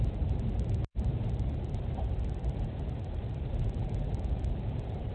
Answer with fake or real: fake